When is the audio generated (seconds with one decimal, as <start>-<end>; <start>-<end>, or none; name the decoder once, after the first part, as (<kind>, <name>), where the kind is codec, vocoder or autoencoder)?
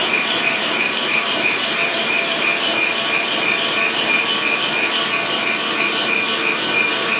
0.0-2.5 (vocoder, BigVGAN v2); 6.6-7.2